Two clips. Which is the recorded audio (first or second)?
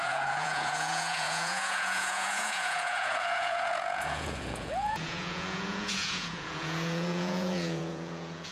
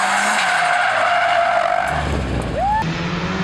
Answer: second